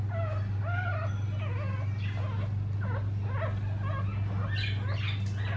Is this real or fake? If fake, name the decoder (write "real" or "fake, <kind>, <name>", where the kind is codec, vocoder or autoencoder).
real